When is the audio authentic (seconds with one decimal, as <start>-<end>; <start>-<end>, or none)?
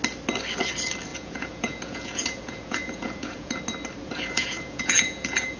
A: 0.0-1.1; 3.6-4.0